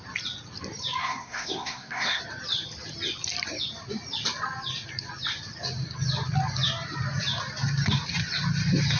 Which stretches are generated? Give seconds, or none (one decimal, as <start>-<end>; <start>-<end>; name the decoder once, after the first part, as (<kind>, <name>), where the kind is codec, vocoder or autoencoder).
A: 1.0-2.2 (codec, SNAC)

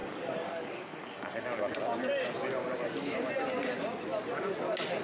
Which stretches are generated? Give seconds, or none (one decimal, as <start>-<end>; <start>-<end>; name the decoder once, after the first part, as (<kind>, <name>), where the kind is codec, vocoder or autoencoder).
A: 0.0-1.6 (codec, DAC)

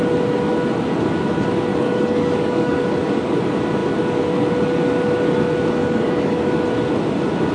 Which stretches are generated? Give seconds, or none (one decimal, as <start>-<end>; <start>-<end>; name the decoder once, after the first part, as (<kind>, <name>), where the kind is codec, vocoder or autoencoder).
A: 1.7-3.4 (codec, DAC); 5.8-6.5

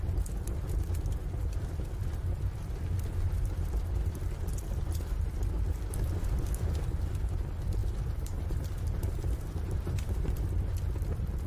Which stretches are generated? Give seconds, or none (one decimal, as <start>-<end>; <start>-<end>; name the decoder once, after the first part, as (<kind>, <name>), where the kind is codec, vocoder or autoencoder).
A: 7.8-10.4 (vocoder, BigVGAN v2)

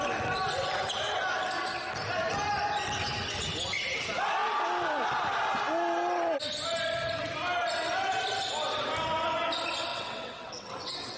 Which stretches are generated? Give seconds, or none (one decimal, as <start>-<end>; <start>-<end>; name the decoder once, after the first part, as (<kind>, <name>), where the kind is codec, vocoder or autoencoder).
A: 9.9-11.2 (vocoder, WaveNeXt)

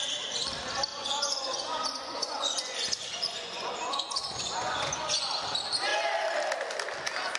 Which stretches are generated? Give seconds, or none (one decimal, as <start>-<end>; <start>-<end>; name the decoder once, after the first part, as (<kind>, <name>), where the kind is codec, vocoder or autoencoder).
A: 0.9-5.3 (vocoder, Vocos)